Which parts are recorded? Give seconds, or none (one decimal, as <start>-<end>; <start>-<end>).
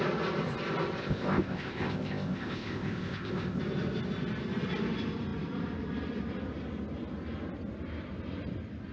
0.0-1.0; 3.6-8.9